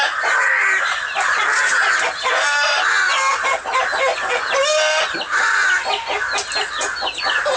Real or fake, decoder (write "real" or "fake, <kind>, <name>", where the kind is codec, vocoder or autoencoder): real